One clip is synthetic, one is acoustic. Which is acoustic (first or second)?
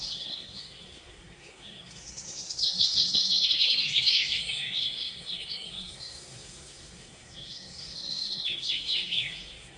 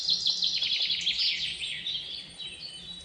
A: second